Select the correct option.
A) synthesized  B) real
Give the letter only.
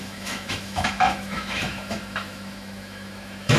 A